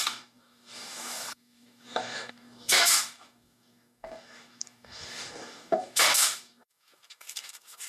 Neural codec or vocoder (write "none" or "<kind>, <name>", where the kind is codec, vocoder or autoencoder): codec, DAC